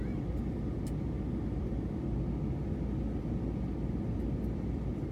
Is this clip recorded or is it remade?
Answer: recorded